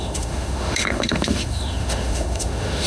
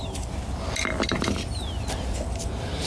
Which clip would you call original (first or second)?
second